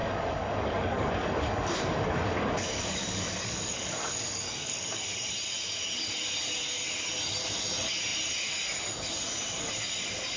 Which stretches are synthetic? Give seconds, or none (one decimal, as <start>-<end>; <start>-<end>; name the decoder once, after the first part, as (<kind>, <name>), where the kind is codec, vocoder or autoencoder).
0.0-5.0 (codec, DAC)